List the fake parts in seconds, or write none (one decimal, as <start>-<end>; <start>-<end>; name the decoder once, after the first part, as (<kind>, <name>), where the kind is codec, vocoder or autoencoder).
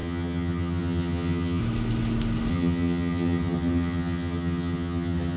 0.0-1.6 (vocoder, HiFi-GAN); 2.5-5.4